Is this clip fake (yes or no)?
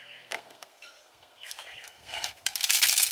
yes